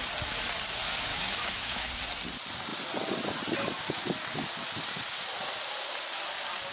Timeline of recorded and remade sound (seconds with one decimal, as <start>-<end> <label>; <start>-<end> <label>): 0.0-1.1 recorded; 1.1-1.9 remade; 1.9-6.7 recorded